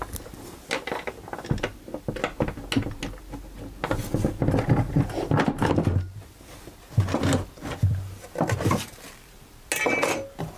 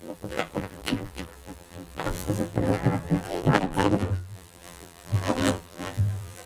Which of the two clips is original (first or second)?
first